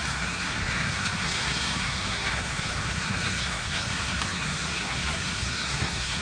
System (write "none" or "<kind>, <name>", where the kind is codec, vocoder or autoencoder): codec, SNAC